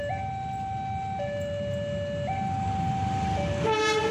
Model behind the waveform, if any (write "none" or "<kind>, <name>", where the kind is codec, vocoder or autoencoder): none